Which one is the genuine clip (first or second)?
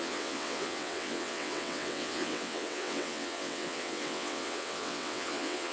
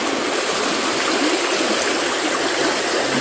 second